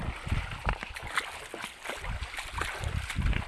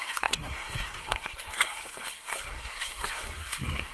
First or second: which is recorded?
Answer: first